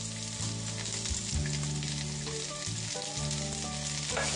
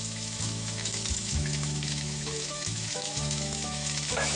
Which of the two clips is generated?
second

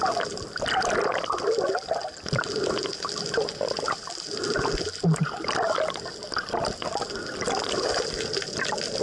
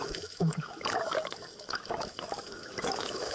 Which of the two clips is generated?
second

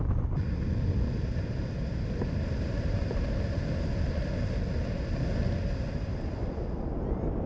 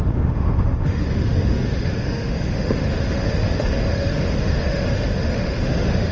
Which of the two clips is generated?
second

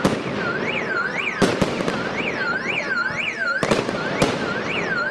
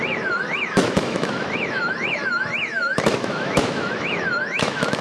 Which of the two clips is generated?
second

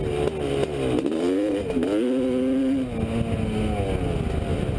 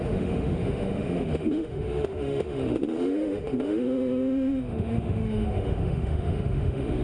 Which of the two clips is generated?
second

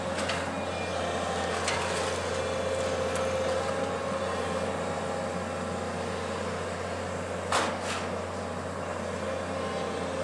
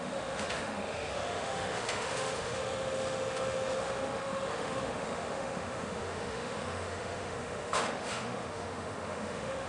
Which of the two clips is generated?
second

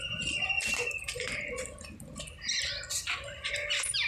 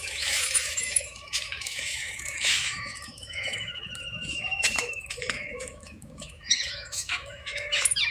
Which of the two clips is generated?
second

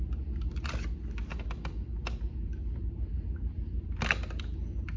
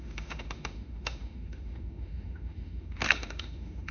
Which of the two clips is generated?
second